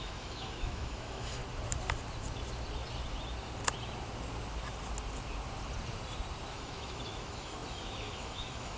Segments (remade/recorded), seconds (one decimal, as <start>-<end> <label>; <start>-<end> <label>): 0.0-1.4 remade; 1.4-6.5 recorded; 6.5-8.8 remade